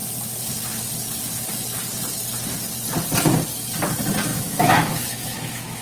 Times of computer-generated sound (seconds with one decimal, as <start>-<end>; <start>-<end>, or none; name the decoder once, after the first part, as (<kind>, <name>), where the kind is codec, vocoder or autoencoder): 4.3-5.8 (autoencoder, DAC-VAE)